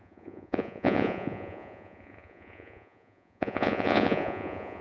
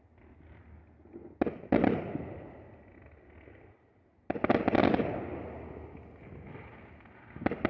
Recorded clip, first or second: second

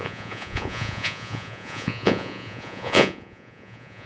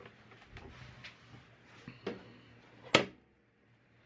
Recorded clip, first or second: second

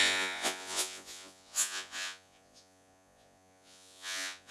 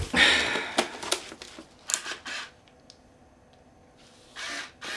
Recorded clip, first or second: second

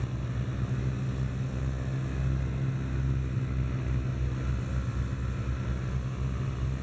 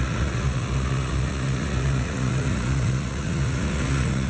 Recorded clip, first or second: first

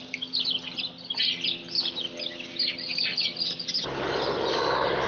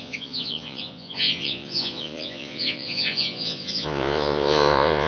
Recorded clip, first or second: first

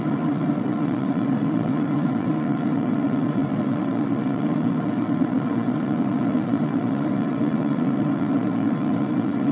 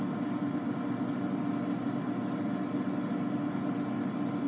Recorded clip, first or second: second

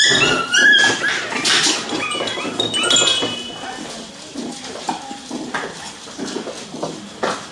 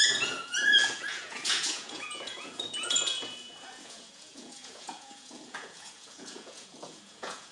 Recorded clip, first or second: first